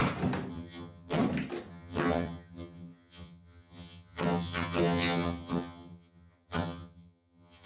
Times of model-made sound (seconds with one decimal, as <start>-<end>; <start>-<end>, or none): 0.5-1.2; 1.7-7.7